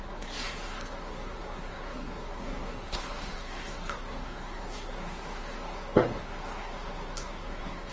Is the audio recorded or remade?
remade